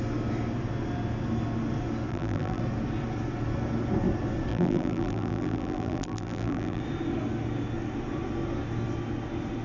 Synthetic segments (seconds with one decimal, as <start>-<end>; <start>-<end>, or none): 2.1-2.6; 4.5-6.8